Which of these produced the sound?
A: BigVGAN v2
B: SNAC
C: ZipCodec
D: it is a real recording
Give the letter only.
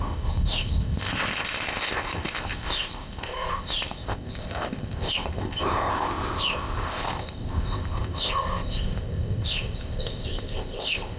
C